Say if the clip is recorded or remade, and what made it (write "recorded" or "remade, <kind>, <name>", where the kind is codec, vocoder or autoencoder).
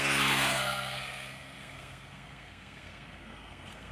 remade, codec, SNAC